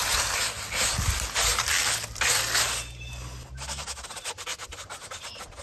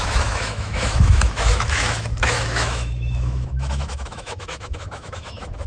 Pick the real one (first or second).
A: first